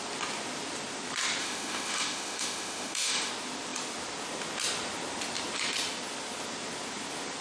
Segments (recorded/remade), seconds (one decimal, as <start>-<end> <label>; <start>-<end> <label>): 0.0-1.4 recorded; 1.4-3.3 remade; 3.3-7.4 recorded